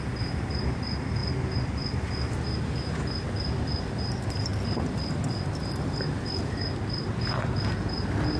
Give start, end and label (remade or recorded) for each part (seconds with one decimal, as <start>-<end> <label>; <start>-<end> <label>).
0.0-8.4 recorded